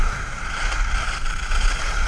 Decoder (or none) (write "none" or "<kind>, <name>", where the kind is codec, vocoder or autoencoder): none